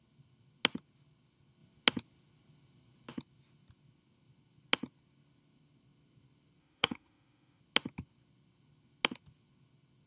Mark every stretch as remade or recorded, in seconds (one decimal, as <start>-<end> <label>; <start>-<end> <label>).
0.0-6.6 recorded; 6.6-7.6 remade; 7.6-10.1 recorded